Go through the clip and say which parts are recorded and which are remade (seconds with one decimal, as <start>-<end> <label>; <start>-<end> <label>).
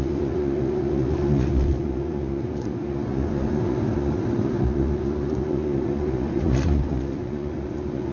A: 0.0-8.1 remade